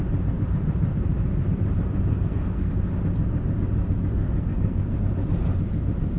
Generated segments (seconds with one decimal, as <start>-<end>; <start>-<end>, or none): 2.1-2.7; 4.2-5.0